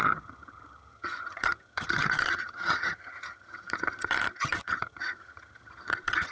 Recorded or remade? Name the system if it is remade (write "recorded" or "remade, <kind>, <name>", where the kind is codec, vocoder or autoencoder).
remade, vocoder, HiFi-GAN